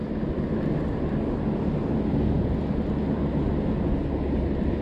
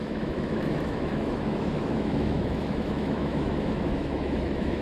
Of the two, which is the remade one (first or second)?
second